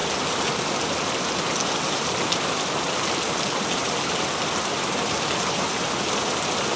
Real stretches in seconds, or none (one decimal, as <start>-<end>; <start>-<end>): none